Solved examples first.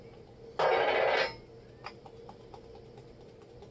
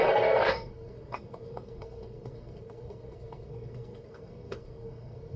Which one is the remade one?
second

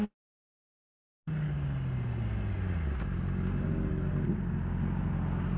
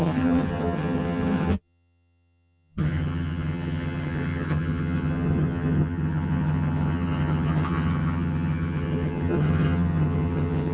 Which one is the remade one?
second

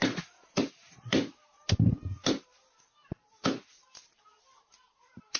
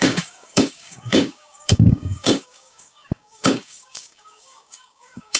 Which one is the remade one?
second